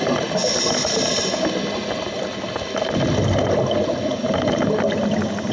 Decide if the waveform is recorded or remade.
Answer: recorded